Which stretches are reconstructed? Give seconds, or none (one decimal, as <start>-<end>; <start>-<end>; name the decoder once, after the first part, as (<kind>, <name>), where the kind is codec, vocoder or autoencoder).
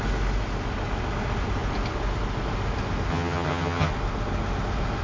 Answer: 3.1-3.9 (vocoder, HiFi-GAN)